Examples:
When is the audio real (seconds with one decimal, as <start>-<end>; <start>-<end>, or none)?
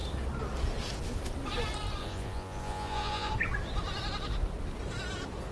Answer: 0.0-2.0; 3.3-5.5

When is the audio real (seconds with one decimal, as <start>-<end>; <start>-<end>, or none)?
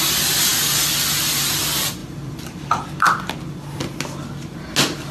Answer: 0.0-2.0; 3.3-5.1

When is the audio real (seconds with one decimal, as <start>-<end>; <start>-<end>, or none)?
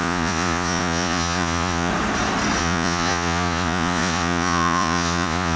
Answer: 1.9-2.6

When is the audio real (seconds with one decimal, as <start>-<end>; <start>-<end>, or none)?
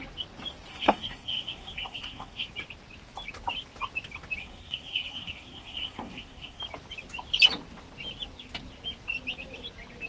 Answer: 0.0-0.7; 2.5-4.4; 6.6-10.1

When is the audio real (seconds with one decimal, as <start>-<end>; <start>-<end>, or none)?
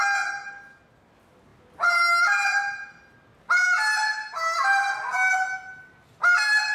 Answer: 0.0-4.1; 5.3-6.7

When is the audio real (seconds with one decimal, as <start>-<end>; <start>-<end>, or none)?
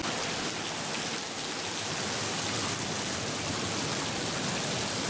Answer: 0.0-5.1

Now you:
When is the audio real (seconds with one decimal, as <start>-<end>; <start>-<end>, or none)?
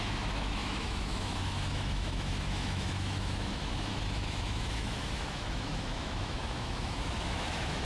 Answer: none